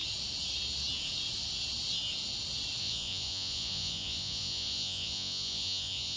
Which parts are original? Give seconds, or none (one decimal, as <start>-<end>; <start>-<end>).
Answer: 0.0-2.8